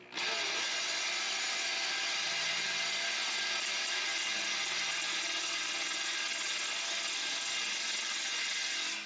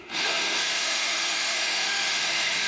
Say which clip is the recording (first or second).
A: first